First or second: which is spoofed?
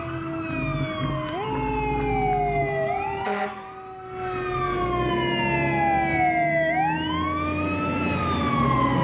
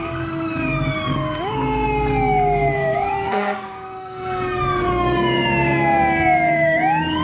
second